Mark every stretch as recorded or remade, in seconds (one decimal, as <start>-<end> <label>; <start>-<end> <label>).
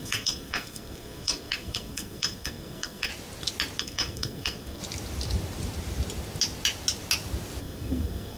0.0-3.1 remade; 3.1-3.8 recorded; 3.8-4.8 remade; 4.8-7.6 recorded; 7.6-8.4 remade